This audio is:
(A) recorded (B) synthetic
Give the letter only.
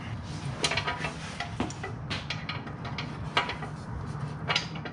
A